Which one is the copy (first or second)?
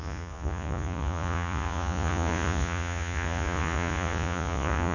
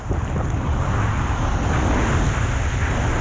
first